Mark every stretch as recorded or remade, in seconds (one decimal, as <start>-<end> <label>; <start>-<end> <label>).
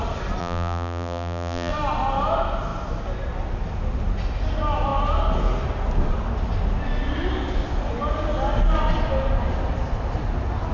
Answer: 0.0-0.4 recorded; 0.4-1.7 remade; 1.7-10.7 recorded